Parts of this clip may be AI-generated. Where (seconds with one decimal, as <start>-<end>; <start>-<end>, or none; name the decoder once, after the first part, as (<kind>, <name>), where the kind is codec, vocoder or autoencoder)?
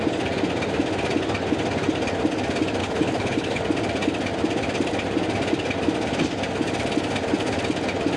2.8-3.6 (codec, HILCodec)